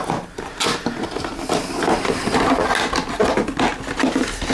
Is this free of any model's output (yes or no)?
yes